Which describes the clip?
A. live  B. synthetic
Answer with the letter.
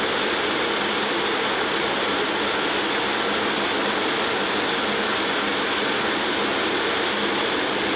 A